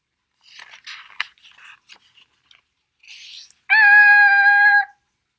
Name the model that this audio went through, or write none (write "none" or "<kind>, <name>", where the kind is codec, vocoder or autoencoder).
none